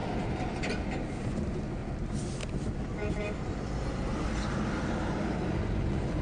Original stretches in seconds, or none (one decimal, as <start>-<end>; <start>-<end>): 0.0-1.2; 1.8-5.5